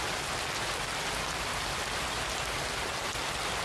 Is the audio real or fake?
real